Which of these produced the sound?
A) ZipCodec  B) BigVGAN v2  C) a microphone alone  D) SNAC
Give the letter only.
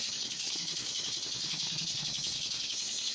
D